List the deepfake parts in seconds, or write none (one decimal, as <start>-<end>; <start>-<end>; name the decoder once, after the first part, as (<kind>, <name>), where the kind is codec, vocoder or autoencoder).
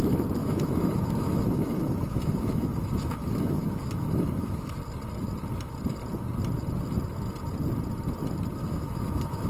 0.4-4.8 (autoencoder, DAC-VAE); 8.6-9.5